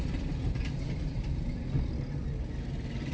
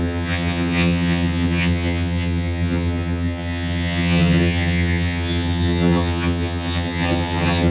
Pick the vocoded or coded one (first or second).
second